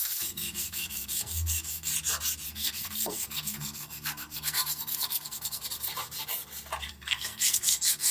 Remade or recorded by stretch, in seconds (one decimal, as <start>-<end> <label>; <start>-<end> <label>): 0.0-1.9 remade; 1.9-2.5 recorded; 2.5-5.6 remade; 5.6-6.9 recorded; 6.9-8.1 remade